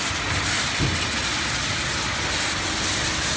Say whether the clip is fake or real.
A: real